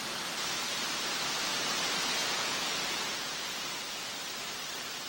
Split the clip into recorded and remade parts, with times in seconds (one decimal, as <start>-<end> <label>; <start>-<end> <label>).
0.0-2.2 recorded; 2.2-4.2 remade; 4.2-5.1 recorded